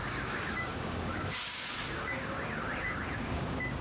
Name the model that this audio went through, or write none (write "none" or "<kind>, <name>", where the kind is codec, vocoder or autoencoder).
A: codec, DAC